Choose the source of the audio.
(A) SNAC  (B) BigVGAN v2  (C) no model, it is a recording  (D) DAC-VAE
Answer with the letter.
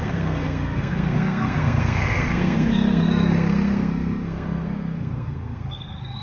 A